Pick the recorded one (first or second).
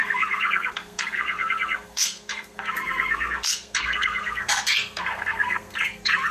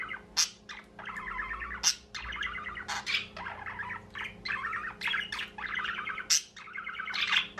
second